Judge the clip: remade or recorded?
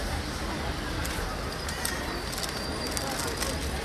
recorded